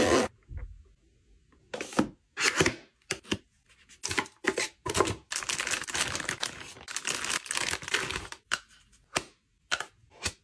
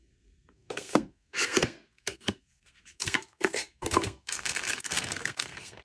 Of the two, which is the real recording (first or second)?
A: first